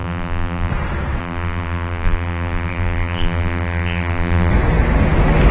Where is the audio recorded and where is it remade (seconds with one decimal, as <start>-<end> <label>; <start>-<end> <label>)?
0.0-0.7 remade; 0.7-1.2 recorded; 1.2-4.5 remade; 4.5-5.5 recorded